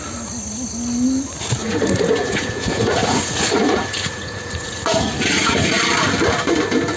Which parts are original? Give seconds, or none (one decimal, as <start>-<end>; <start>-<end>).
0.0-1.6; 5.8-7.0